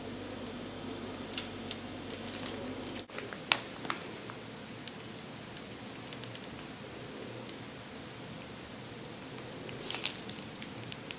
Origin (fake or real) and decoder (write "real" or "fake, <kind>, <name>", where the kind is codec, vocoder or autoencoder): real